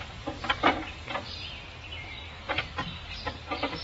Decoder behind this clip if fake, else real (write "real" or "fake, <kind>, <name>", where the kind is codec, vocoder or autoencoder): real